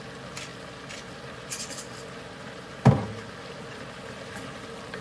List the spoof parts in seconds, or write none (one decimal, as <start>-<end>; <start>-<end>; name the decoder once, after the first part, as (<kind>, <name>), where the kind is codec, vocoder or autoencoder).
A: none